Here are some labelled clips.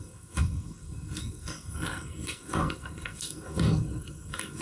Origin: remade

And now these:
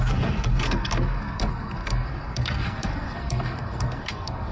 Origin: remade